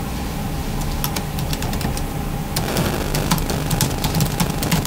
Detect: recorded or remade recorded